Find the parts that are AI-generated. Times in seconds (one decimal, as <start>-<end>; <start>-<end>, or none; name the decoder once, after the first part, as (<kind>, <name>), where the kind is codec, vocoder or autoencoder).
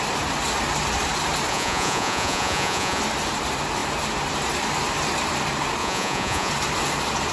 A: 1.5-3.0 (vocoder, Vocos); 5.8-6.5